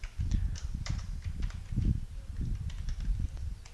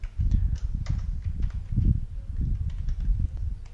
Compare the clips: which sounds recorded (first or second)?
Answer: second